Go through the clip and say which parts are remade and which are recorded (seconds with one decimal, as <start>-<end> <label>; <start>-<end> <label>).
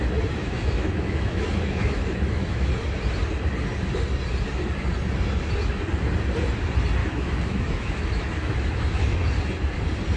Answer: 0.0-0.4 recorded; 0.4-2.7 remade; 2.7-7.0 recorded; 7.0-9.3 remade; 9.3-10.2 recorded